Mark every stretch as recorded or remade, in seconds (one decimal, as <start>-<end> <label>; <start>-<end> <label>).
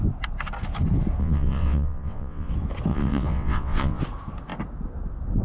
0.0-1.2 recorded; 1.2-2.5 remade; 2.5-2.9 recorded; 2.9-4.0 remade; 4.0-5.4 recorded